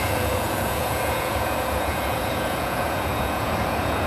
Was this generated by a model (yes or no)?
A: yes